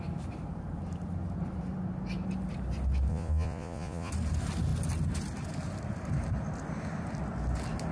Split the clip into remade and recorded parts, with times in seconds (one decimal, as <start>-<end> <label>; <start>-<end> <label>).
0.0-3.1 recorded; 3.1-4.1 remade; 4.1-7.9 recorded